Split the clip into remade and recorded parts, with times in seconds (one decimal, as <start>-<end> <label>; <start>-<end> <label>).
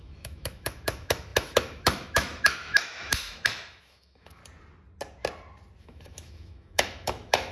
0.0-4.4 remade; 4.4-5.8 recorded; 5.8-7.5 remade